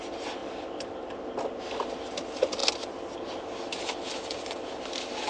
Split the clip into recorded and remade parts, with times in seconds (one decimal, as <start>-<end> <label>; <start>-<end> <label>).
0.0-5.3 recorded

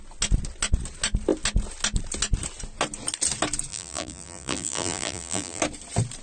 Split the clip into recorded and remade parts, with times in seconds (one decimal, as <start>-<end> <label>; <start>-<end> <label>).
0.0-3.7 recorded; 3.7-5.6 remade; 5.6-6.2 recorded

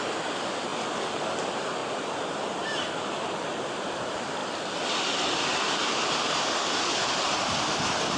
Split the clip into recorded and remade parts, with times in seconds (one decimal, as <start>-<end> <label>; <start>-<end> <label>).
0.0-8.2 recorded

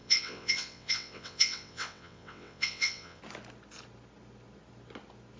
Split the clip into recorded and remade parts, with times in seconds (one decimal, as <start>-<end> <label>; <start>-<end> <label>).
0.0-3.2 remade; 3.2-5.4 recorded

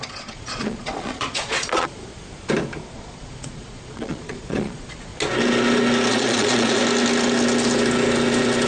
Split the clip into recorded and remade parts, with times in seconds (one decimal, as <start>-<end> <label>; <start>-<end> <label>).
0.0-2.1 remade; 2.1-2.9 recorded; 2.9-5.1 remade; 5.1-6.1 recorded; 6.1-6.8 remade; 6.8-8.7 recorded